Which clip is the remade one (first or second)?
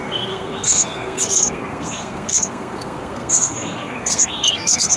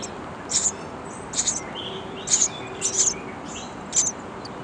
first